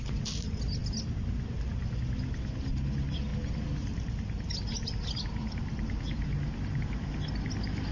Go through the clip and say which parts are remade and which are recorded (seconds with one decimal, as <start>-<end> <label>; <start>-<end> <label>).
0.0-7.9 recorded